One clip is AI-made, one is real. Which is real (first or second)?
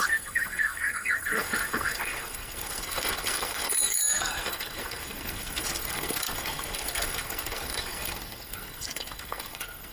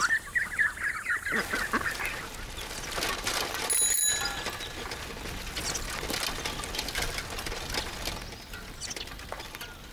second